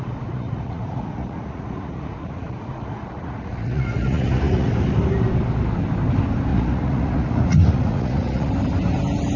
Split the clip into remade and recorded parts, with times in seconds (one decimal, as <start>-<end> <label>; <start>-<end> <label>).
0.0-4.7 remade; 4.7-6.5 recorded; 6.5-8.5 remade; 8.5-9.4 recorded